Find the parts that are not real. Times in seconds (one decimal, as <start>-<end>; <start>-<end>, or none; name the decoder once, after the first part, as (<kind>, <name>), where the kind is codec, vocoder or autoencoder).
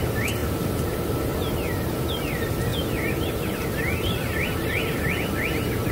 none